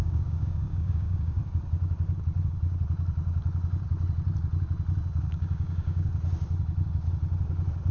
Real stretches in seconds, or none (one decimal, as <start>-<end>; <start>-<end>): 1.4-5.2; 6.1-7.9